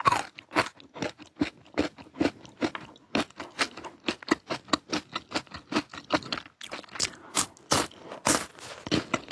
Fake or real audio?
real